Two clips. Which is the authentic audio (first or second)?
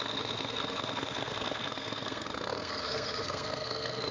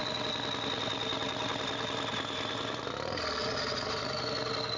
second